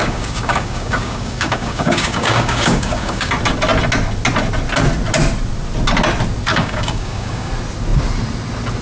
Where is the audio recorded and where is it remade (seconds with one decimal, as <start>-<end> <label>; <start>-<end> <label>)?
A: 0.0-3.3 remade; 3.3-6.5 recorded; 6.5-7.5 remade; 7.5-8.8 recorded